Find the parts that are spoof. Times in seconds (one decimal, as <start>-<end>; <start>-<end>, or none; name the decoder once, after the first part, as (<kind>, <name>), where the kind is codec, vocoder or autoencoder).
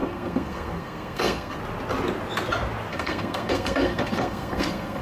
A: 0.0-1.6 (codec, SNAC); 2.9-5.0